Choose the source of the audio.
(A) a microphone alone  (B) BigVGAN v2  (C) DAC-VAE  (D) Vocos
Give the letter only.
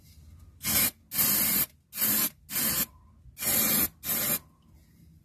A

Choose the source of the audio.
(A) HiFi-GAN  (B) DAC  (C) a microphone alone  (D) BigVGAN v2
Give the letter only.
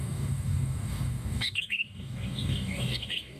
B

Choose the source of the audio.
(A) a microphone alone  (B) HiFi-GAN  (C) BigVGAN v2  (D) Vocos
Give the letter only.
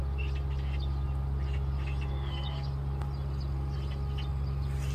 A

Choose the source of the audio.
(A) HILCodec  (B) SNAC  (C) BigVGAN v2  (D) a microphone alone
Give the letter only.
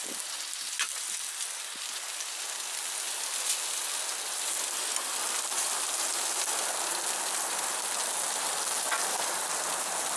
D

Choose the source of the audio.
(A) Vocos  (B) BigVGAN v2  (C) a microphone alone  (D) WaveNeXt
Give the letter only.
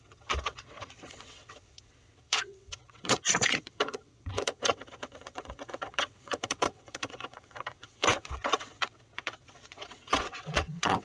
D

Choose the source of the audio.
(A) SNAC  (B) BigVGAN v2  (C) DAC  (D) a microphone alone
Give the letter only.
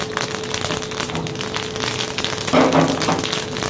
D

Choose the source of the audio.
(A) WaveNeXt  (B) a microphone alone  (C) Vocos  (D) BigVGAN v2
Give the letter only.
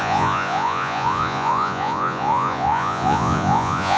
C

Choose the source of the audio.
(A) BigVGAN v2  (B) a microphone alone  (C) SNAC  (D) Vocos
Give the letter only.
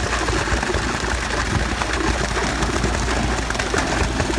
B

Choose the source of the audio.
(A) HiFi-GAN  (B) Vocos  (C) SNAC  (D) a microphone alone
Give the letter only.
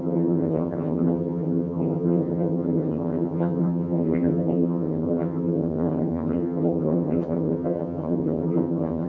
A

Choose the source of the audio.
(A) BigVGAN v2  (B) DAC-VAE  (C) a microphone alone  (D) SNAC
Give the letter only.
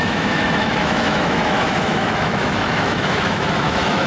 B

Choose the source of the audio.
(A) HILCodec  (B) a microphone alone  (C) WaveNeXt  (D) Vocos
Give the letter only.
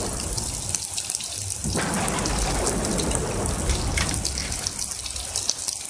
B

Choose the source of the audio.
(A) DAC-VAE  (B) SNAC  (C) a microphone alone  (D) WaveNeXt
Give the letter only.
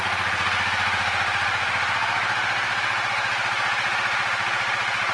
C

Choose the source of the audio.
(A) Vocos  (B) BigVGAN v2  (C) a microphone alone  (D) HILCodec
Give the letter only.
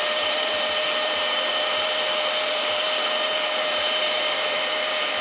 B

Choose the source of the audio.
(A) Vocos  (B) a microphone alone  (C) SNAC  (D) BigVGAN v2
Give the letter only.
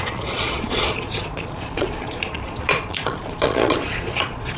A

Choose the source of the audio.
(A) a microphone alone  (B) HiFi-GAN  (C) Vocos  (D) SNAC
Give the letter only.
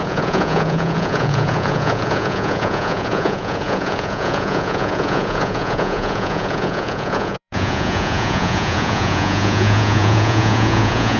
C